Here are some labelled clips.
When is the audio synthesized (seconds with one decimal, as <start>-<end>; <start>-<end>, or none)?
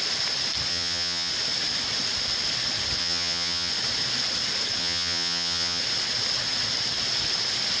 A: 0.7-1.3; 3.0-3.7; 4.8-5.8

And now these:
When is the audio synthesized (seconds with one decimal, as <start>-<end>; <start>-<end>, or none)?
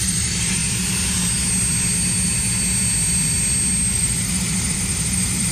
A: 0.0-0.6; 3.9-5.5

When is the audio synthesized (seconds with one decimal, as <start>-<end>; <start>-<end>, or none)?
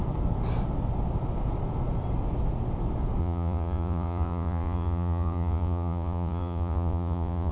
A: 3.2-7.5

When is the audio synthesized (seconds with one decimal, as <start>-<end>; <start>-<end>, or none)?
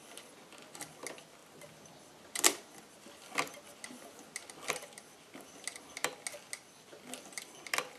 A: none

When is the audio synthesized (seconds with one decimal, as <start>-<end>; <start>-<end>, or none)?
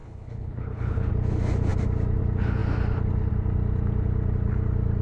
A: 0.0-1.1